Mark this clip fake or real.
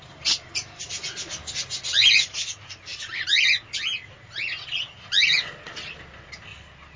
real